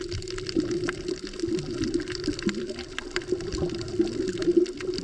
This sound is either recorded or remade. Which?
remade